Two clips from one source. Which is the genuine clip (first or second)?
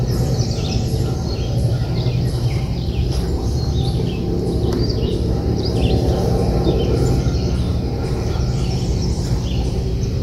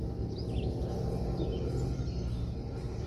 second